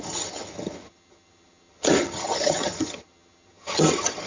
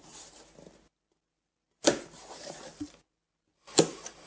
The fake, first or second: first